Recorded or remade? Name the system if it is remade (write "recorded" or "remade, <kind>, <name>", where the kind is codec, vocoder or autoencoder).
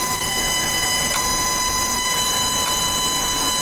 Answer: remade, vocoder, Vocos